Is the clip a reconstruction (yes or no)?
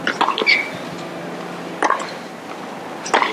no